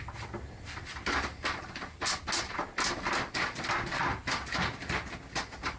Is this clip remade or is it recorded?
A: recorded